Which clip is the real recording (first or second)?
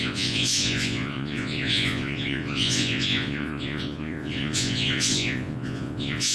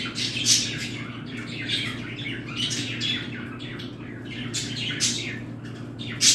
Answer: second